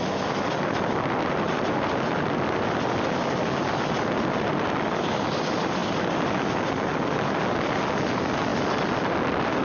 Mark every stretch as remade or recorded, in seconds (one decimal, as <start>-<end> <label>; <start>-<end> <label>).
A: 0.0-9.6 recorded

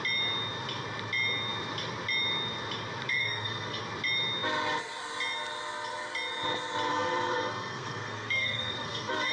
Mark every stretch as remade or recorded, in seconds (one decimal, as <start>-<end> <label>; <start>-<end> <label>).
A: 0.0-3.1 recorded; 3.1-3.8 remade; 3.8-6.9 recorded; 6.9-9.3 remade

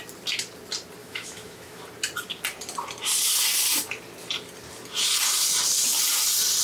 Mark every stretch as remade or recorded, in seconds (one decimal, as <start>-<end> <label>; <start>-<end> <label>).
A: 0.0-1.0 recorded; 1.0-1.8 remade; 1.8-6.6 recorded

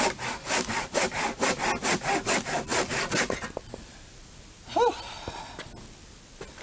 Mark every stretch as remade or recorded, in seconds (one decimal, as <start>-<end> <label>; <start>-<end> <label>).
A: 0.0-6.6 recorded

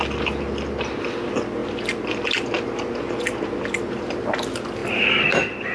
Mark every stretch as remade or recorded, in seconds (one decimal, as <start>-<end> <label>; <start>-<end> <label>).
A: 0.0-4.8 recorded; 4.8-5.3 remade; 5.3-5.7 recorded